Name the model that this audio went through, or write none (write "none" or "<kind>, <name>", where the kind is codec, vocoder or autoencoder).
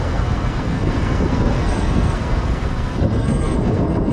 codec, SNAC